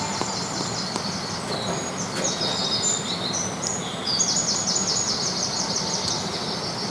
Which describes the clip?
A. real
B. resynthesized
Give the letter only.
A